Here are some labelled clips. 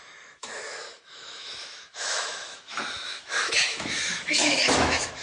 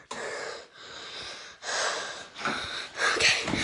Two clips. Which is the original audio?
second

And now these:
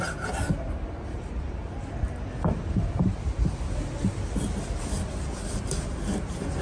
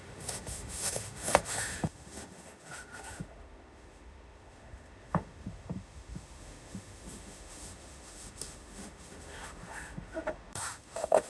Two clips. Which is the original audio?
first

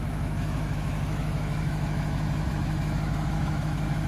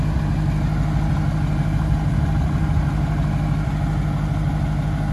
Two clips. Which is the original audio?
second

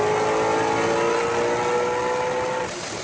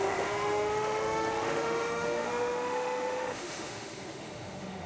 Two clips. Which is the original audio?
first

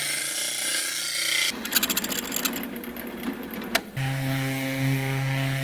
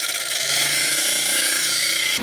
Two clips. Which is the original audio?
first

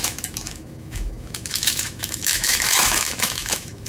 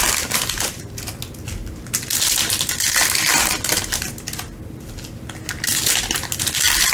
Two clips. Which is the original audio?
second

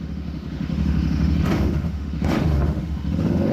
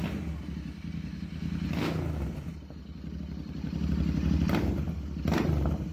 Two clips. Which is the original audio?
second